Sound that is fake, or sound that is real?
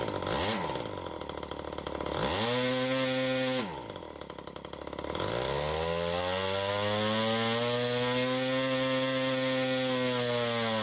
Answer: real